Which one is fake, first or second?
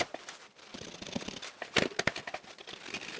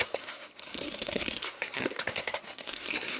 second